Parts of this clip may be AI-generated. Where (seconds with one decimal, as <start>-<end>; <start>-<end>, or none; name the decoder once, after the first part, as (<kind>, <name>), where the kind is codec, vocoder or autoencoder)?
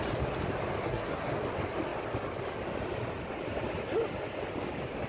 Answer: 0.8-1.3 (codec, SNAC)